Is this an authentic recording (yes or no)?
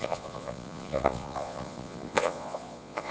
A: no